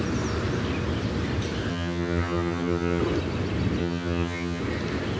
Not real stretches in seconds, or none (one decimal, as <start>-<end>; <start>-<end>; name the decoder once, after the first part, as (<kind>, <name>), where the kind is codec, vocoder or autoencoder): 1.7-3.0 (vocoder, HiFi-GAN); 3.8-4.6